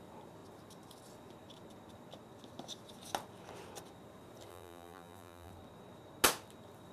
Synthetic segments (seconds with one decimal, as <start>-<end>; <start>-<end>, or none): 4.5-5.5